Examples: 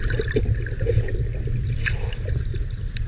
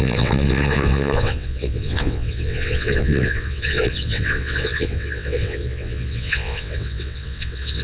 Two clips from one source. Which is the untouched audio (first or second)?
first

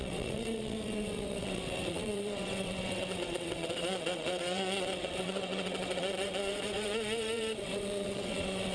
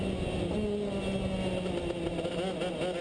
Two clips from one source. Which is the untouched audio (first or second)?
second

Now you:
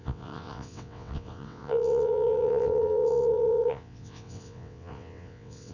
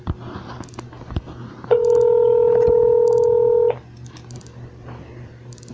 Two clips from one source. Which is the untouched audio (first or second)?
second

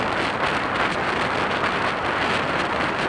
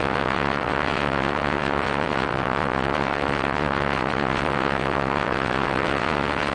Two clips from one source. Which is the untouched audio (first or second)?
first